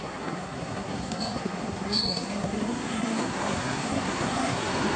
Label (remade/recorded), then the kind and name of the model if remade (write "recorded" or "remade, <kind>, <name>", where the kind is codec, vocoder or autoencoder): remade, codec, SNAC